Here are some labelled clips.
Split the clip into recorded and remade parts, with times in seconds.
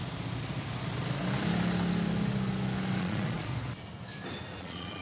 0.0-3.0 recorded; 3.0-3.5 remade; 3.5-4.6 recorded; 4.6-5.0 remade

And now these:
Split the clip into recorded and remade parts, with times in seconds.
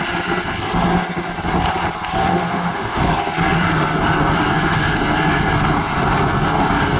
0.0-2.2 recorded; 2.2-3.0 remade; 3.0-7.0 recorded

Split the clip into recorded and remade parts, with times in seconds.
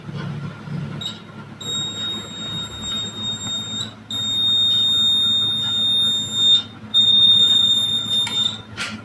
0.0-6.9 recorded; 6.9-8.1 remade; 8.1-9.0 recorded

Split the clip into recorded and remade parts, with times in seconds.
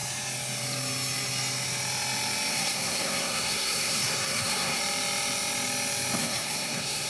0.0-2.5 recorded; 2.5-4.8 remade; 4.8-6.2 recorded; 6.2-7.1 remade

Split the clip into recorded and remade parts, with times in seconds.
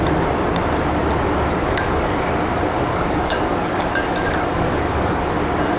0.0-1.6 recorded; 1.6-2.3 remade; 2.3-2.7 recorded; 2.7-5.2 remade; 5.2-5.8 recorded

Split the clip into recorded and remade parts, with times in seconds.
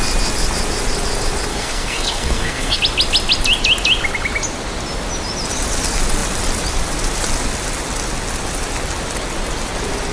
0.0-1.5 recorded; 1.5-2.8 remade; 2.8-10.1 recorded